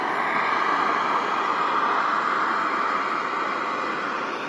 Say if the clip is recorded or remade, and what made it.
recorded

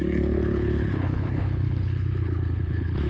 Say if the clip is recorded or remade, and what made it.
remade, codec, HILCodec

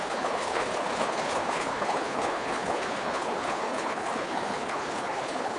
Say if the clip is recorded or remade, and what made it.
remade, codec, HILCodec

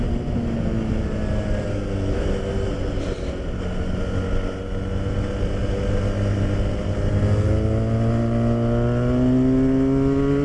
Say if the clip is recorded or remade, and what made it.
recorded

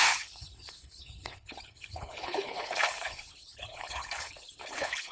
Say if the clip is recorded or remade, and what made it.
remade, codec, HILCodec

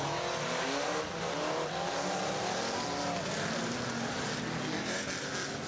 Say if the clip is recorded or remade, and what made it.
recorded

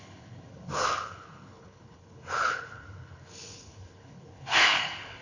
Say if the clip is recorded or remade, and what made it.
remade, codec, HILCodec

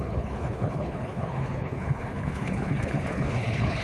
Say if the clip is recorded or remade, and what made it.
remade, codec, HILCodec